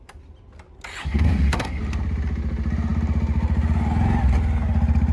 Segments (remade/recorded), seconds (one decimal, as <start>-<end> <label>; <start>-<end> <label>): 0.0-1.0 recorded; 1.0-1.8 remade; 1.8-5.1 recorded